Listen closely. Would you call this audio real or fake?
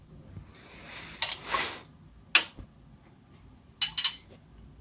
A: real